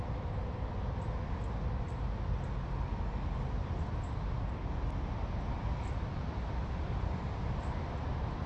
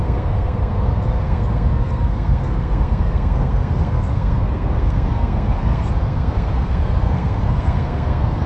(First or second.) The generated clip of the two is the second